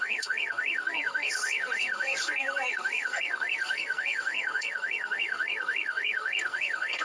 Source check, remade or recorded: remade